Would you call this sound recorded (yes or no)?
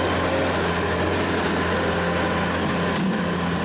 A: yes